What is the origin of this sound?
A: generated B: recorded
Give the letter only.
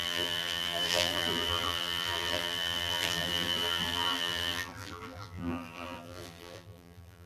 A